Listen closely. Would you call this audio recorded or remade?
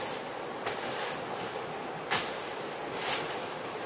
recorded